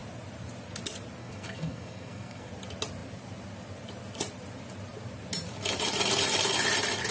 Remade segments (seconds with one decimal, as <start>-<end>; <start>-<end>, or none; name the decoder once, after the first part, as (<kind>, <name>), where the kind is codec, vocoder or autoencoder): 1.2-2.5 (codec, SNAC)